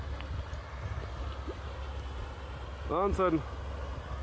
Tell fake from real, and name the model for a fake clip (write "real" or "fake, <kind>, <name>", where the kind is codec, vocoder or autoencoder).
real